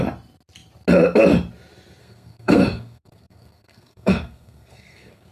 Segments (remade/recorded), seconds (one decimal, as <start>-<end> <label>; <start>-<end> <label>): 0.0-2.0 recorded; 2.0-5.3 remade